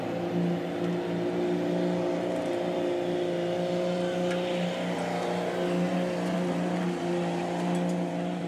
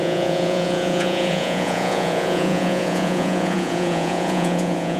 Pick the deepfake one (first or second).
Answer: second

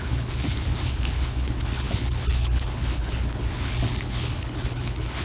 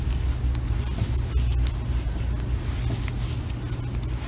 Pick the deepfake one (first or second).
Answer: first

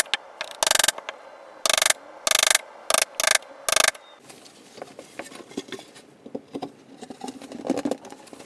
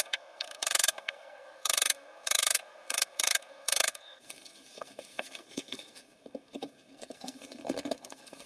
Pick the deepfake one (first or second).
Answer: second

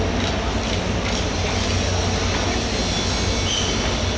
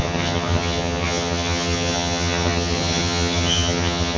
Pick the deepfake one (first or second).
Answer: second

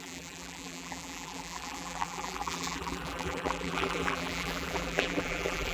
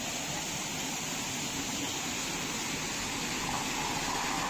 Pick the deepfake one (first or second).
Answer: first